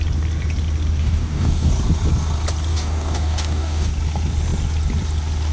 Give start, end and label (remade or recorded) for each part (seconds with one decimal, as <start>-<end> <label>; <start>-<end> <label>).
0.0-1.0 recorded; 1.0-1.7 remade; 1.7-2.7 recorded; 2.7-3.9 remade; 3.9-5.5 recorded